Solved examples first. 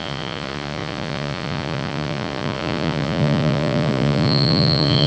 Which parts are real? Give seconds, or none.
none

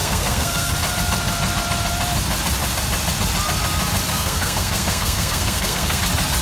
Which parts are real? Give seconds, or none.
0.7-4.1; 6.0-6.4